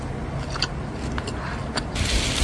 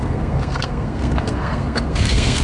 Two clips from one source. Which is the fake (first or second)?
second